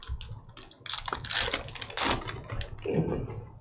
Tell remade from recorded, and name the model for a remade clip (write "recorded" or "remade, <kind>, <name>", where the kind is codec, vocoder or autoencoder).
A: recorded